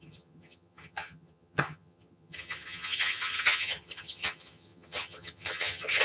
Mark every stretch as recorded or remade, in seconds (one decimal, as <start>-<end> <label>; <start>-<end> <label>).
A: 0.0-6.0 remade